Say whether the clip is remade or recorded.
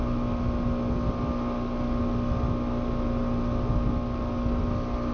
recorded